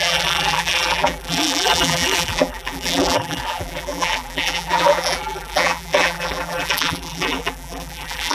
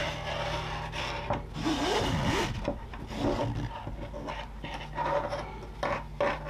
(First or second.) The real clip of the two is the second